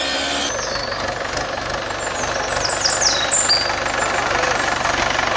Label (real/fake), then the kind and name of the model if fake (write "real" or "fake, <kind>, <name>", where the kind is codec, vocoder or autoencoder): real